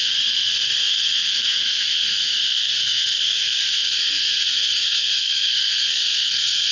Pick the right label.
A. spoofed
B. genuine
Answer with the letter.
A